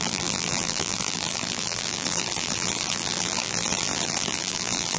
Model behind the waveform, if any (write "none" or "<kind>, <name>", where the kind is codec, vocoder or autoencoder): vocoder, BigVGAN v2